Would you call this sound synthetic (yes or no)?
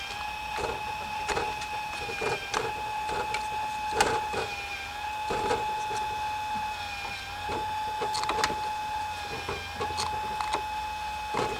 no